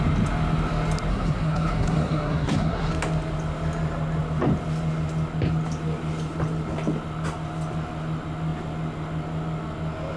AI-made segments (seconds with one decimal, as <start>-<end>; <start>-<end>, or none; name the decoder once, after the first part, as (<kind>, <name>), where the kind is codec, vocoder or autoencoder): 1.1-2.9 (codec, SNAC)